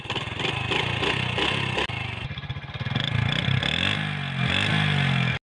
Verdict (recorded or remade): recorded